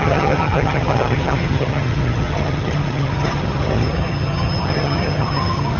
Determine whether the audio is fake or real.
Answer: fake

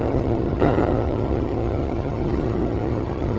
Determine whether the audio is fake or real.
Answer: fake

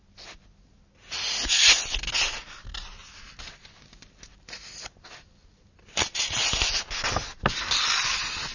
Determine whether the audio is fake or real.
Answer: real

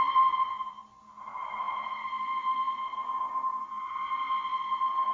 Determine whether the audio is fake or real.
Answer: real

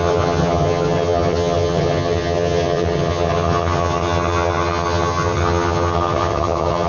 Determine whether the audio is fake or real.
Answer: fake